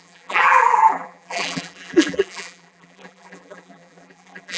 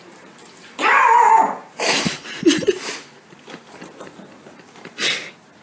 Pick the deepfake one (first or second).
first